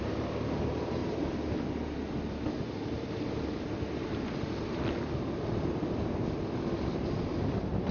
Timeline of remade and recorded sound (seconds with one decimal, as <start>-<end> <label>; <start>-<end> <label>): 0.0-7.9 recorded